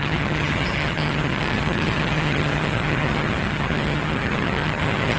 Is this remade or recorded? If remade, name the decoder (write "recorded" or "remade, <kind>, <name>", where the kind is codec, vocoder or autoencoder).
remade, vocoder, HiFi-GAN